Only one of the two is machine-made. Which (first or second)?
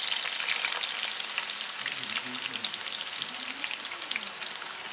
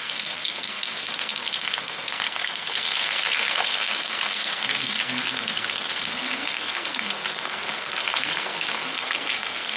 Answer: second